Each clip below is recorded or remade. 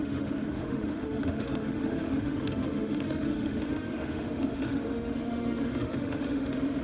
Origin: remade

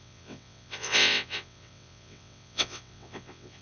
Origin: remade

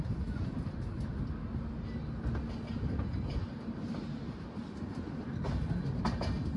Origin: recorded